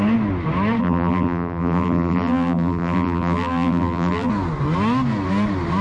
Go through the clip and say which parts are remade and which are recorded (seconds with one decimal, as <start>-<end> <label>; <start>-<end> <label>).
0.0-0.8 recorded; 0.8-4.3 remade; 4.3-5.8 recorded

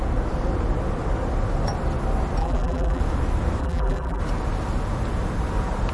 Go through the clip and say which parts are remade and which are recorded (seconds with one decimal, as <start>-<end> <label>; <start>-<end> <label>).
0.0-2.4 recorded; 2.4-3.0 remade; 3.0-3.6 recorded; 3.6-4.2 remade; 4.2-5.9 recorded

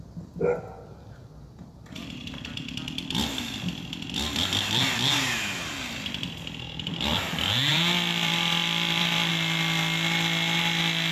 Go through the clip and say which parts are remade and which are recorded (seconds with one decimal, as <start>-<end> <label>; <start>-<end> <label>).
0.0-7.7 recorded; 7.7-9.3 remade; 9.3-11.1 recorded